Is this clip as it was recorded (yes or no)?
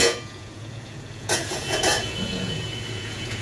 no